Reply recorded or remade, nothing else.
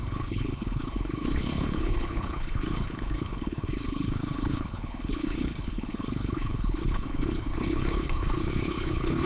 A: remade